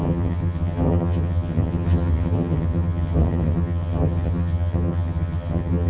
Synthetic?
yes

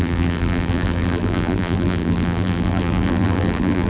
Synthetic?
yes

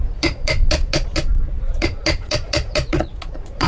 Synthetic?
yes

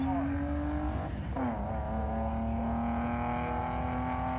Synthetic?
no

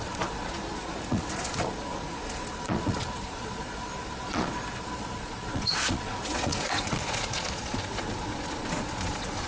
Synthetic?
yes